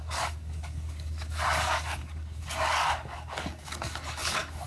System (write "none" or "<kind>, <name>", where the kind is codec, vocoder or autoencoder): codec, DAC